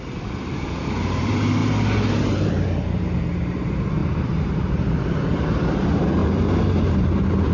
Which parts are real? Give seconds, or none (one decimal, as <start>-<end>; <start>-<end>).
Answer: 1.6-2.2